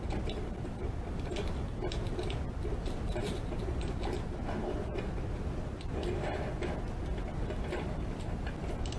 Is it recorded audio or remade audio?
recorded